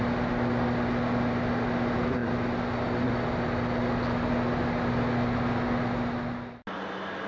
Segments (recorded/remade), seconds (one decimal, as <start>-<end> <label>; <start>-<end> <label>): 0.0-7.3 recorded